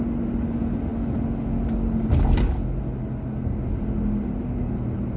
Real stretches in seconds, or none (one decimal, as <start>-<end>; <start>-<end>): 0.0-5.2